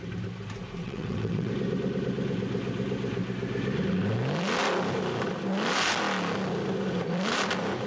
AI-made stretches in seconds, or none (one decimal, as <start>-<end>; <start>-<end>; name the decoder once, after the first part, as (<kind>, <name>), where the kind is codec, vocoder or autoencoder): 0.8-1.5 (vocoder, WaveNeXt)